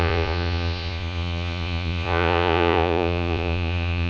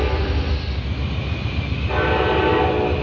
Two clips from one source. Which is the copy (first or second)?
first